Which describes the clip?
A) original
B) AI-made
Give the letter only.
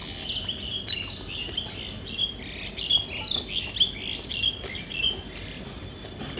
A